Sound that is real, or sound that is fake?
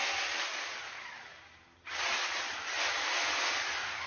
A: real